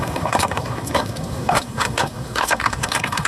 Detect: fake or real fake